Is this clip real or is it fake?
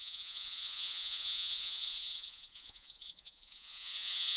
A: fake